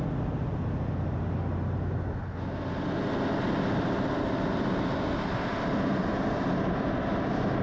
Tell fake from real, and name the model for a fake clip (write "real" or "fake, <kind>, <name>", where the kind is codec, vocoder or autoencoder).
real